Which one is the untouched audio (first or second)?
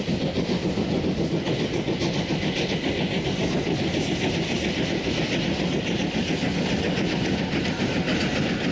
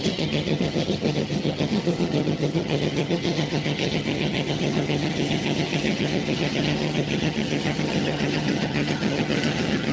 first